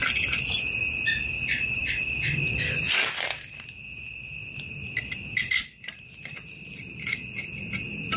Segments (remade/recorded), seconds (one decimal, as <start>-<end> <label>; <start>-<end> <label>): 0.0-1.8 recorded; 1.8-6.7 remade; 6.7-8.2 recorded